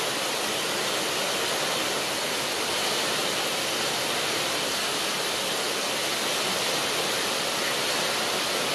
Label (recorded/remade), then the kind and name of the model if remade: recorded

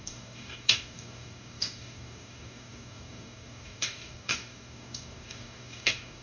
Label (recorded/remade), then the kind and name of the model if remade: remade, codec, DAC